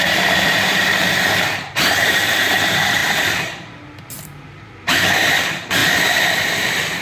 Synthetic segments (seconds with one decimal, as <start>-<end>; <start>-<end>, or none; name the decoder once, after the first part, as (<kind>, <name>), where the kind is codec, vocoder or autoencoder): 0.0-7.0 (vocoder, BigVGAN v2)

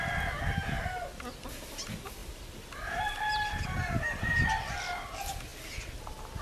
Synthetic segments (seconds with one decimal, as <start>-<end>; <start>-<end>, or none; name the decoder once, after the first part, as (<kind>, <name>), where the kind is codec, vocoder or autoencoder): none

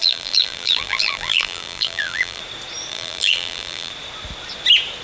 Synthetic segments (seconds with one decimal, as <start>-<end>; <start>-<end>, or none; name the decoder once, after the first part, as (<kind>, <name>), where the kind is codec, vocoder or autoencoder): 0.0-2.4 (vocoder, BigVGAN v2); 2.9-3.9

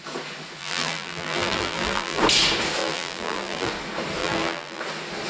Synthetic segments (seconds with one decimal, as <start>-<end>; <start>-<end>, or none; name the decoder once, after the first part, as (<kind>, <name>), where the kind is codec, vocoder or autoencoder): 0.6-2.2 (vocoder, BigVGAN v2); 2.8-3.7; 4.2-4.8

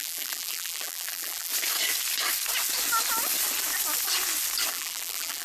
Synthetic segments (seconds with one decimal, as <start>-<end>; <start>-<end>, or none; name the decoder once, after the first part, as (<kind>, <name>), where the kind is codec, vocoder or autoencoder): 0.0-1.5 (vocoder, BigVGAN v2); 4.7-5.4